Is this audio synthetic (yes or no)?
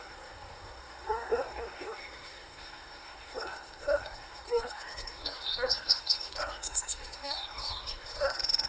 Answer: yes